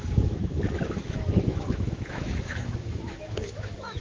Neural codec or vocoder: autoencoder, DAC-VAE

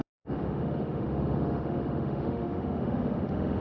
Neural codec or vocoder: autoencoder, DAC-VAE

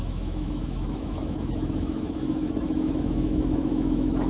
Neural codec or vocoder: autoencoder, DAC-VAE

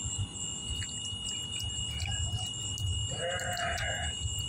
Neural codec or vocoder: none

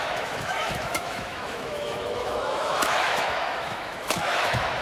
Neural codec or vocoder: autoencoder, DAC-VAE